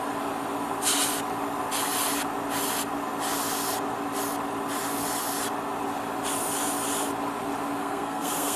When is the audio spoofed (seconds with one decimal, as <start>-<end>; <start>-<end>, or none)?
7.8-8.6